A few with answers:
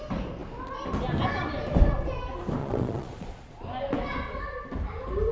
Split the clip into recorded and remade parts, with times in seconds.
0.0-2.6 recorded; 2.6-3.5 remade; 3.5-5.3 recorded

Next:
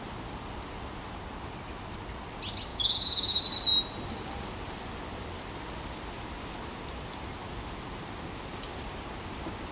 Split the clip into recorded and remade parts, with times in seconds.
0.0-2.7 recorded; 2.7-3.4 remade; 3.4-9.7 recorded

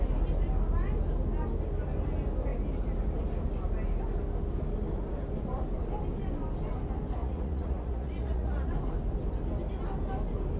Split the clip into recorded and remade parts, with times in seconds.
0.0-7.2 recorded; 7.2-8.7 remade; 8.7-10.6 recorded

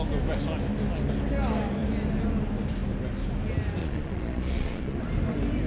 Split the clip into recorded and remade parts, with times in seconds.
0.0-3.8 recorded; 3.8-5.0 remade; 5.0-5.7 recorded